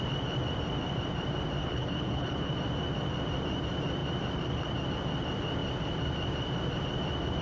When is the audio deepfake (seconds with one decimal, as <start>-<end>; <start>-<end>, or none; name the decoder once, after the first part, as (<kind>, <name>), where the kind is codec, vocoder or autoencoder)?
1.6-2.5 (codec, HILCodec)